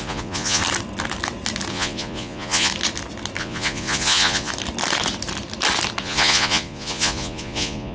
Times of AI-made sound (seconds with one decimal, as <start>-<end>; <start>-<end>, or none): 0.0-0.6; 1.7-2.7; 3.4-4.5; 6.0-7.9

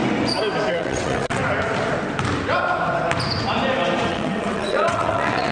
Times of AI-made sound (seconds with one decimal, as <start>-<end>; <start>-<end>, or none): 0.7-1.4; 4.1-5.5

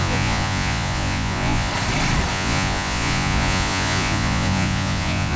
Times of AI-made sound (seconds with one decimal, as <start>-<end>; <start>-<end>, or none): 0.0-1.7; 2.3-5.4

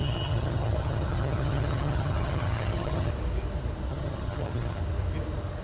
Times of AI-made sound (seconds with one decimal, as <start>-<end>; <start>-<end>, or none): 0.0-3.1; 3.9-4.8